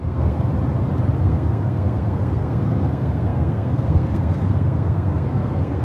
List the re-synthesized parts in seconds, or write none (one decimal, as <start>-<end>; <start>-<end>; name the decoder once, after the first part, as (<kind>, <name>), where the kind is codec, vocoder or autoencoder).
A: 0.0-0.5 (codec, SNAC); 1.2-5.8